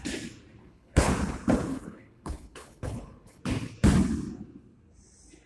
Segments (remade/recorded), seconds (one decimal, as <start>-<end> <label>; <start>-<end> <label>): 0.0-0.6 recorded; 0.6-1.1 remade; 1.1-1.7 recorded; 1.7-3.4 remade; 3.4-5.5 recorded